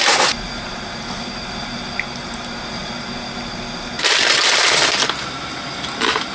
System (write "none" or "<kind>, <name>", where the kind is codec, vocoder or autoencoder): none